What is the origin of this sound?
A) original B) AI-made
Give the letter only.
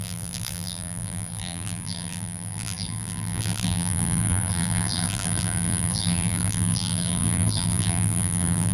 B